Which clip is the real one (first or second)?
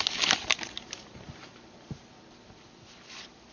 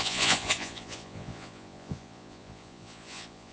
first